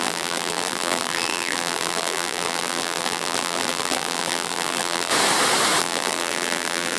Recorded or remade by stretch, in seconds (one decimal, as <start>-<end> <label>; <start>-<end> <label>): 0.0-5.1 remade; 5.1-5.8 recorded; 5.8-7.0 remade